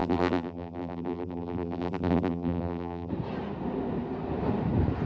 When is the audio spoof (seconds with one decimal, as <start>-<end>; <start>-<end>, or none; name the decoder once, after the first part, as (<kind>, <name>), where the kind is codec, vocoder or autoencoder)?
0.0-3.1 (vocoder, BigVGAN v2)